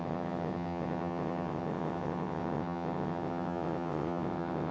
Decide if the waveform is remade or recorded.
remade